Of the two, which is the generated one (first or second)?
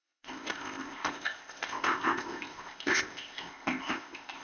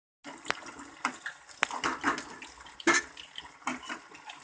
first